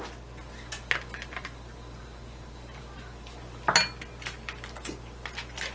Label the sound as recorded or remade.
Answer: recorded